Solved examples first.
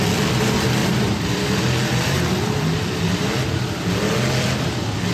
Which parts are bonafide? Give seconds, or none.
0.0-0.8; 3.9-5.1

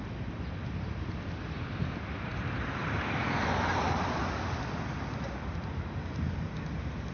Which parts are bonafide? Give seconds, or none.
0.0-7.1

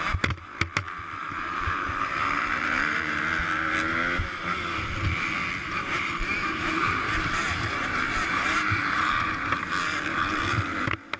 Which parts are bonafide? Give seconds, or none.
0.0-1.2; 3.2-5.6; 9.6-11.2

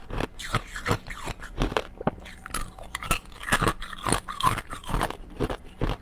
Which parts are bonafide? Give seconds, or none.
0.0-6.0